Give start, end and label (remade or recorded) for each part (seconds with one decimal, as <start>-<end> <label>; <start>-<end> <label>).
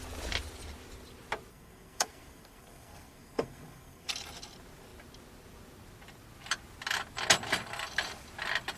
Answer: 0.0-1.5 recorded; 1.5-4.1 remade; 4.1-8.8 recorded